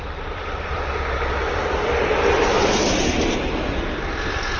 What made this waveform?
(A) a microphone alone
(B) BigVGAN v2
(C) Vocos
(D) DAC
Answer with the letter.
B